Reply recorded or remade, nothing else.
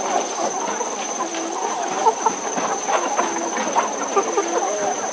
recorded